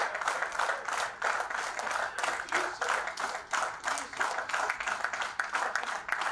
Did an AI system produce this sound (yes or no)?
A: no